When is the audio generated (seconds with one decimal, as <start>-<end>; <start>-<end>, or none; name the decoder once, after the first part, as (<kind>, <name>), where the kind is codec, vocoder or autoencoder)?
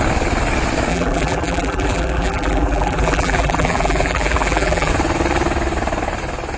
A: 0.9-4.9 (vocoder, BigVGAN v2)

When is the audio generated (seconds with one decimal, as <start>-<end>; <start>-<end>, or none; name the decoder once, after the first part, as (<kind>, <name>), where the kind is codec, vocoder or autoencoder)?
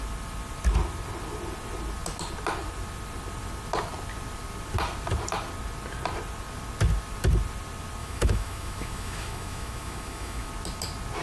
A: 8.0-10.5 (autoencoder, DAC-VAE)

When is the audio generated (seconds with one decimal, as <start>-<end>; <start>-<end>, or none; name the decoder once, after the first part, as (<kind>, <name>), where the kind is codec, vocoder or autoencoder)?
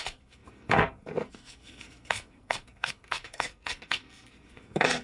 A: 0.0-5.0 (codec, SNAC)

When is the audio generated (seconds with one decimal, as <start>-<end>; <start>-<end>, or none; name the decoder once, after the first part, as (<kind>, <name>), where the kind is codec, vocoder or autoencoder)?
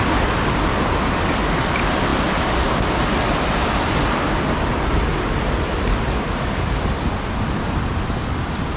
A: none